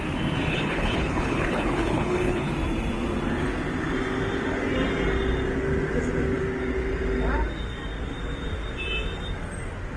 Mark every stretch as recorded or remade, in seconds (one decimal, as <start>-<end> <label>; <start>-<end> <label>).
0.0-0.5 recorded; 0.5-2.5 remade; 2.5-10.0 recorded